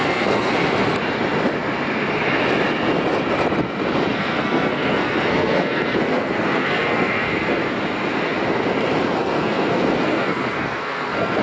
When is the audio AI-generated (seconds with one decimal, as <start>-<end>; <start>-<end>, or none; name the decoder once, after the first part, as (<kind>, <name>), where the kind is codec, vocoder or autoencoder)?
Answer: 0.0-0.5 (codec, SNAC); 4.1-7.6; 9.1-11.4